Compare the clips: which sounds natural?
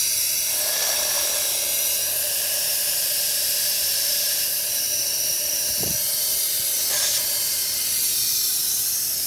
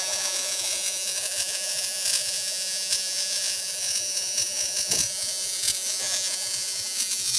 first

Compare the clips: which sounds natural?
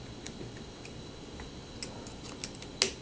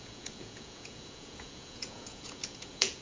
first